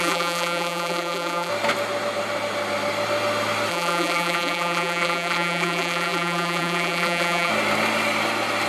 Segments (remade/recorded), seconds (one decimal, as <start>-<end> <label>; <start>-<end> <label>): 0.0-1.5 remade; 1.5-3.7 recorded; 3.7-7.5 remade; 7.5-8.7 recorded

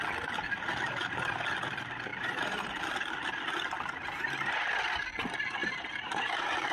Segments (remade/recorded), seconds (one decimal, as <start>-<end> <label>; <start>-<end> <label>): 0.0-2.1 recorded; 2.1-2.8 remade; 2.8-5.6 recorded; 5.6-6.7 remade

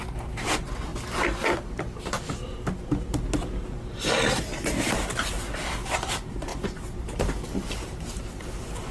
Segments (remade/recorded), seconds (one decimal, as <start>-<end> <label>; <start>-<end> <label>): 0.0-0.9 remade; 0.9-4.3 recorded; 4.3-8.9 remade